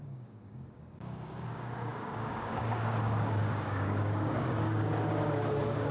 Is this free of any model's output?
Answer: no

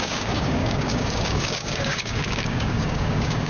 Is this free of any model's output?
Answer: no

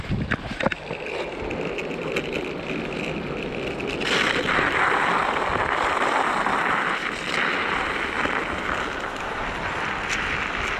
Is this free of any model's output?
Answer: yes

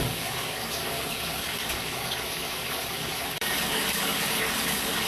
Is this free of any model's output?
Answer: no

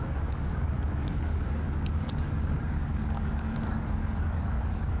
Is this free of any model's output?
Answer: no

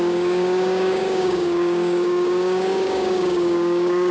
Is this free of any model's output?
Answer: no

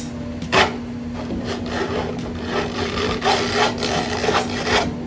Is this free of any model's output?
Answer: yes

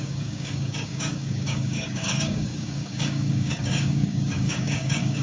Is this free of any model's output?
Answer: no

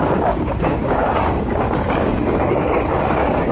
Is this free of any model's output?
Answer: no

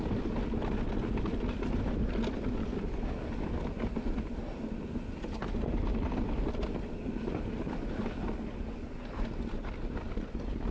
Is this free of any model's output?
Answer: yes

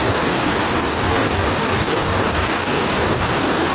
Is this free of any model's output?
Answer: no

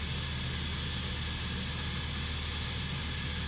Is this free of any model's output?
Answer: yes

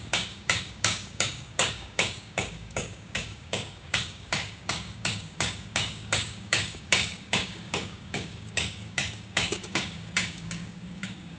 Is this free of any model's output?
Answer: no